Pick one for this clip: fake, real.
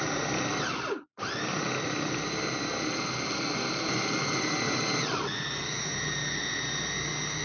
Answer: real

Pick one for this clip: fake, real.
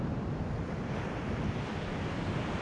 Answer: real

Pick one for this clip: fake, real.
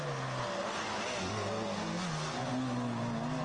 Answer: real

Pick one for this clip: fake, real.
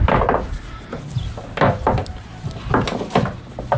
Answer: real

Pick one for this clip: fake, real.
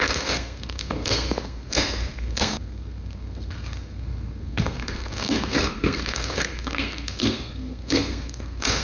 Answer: fake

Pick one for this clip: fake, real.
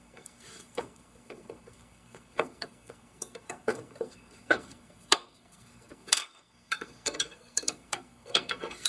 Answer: fake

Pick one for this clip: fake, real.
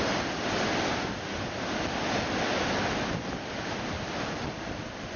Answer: real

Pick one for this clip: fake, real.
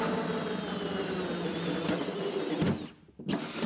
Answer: real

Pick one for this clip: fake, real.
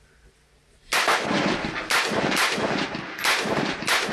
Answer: real